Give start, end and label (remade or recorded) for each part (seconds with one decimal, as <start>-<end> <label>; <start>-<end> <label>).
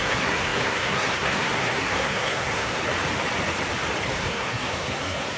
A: 0.0-2.8 remade; 2.8-4.2 recorded; 4.2-5.4 remade